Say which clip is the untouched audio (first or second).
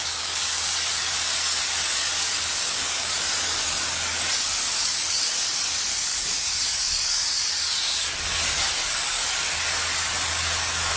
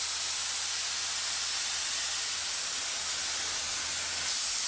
second